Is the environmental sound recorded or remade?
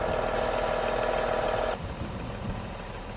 recorded